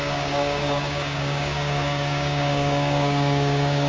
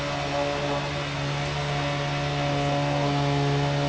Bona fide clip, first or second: second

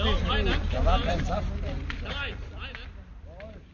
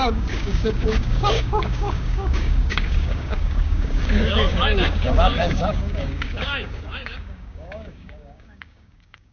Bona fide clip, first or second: first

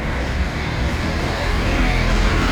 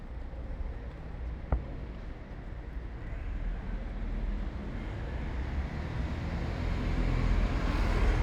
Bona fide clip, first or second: second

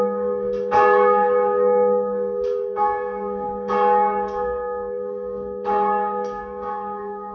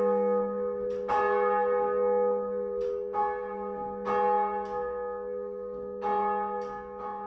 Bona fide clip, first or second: second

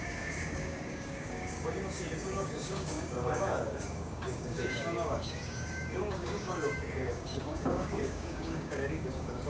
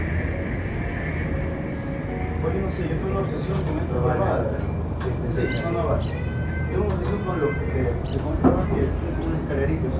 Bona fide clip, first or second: second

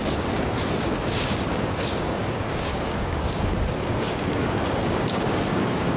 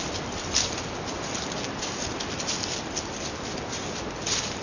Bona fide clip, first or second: second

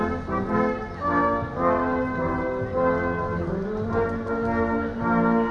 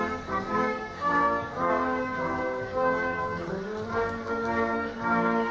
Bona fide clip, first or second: first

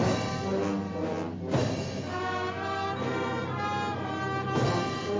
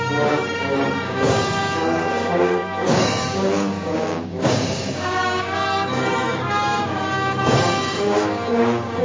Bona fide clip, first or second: first